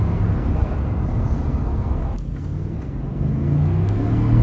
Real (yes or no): no